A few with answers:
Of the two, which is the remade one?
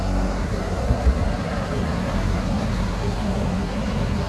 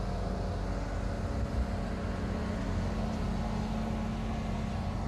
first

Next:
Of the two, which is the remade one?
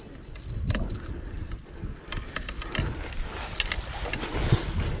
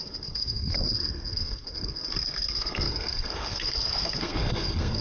second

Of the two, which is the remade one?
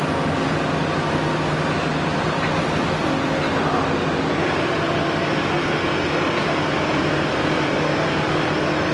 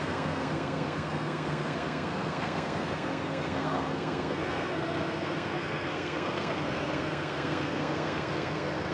second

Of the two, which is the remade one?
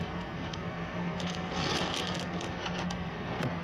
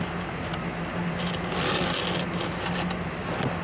first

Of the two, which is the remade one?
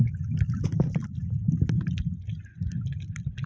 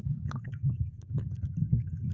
second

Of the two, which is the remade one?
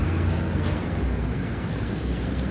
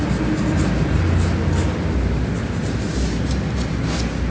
first